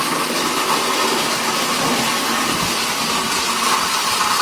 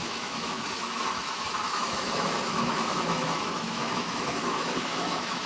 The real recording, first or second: first